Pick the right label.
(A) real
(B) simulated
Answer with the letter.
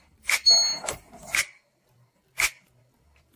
A